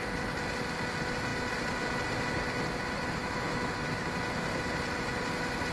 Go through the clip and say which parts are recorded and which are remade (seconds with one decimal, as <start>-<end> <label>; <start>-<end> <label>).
0.0-3.2 recorded; 3.2-3.9 remade; 3.9-5.7 recorded